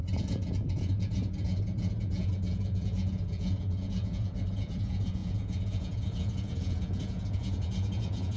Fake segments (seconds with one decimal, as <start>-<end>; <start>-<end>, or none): 0.0-8.4